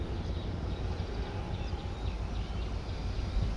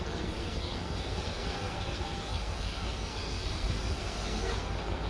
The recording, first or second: first